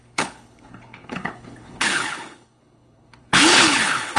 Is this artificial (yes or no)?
yes